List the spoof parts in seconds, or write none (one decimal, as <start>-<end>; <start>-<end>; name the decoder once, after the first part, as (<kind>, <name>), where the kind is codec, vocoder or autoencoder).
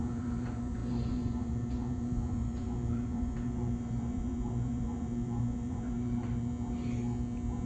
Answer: 0.0-6.5 (vocoder, Vocos)